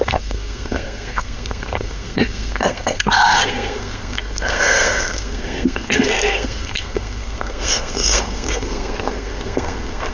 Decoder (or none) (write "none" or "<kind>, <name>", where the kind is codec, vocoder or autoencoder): codec, SNAC